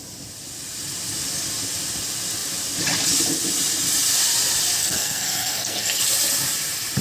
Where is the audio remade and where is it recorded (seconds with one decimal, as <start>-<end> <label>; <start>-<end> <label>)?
0.0-4.8 recorded; 4.8-6.0 remade; 6.0-7.0 recorded